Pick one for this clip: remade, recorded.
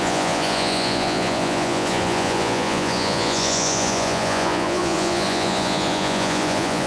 remade